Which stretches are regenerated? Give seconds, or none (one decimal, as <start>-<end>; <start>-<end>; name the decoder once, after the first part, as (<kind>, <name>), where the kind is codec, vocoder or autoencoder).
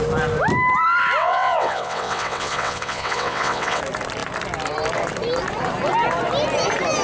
1.2-3.8 (vocoder, WaveNeXt)